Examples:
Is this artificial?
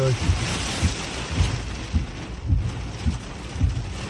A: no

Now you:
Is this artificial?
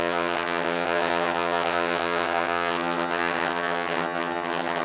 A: yes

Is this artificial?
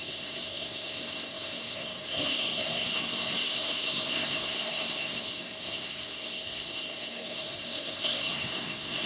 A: yes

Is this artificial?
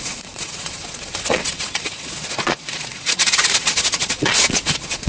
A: yes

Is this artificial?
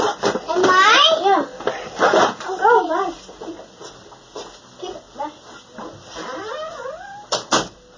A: no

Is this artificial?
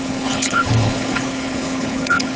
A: yes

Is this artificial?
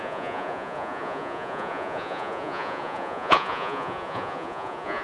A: yes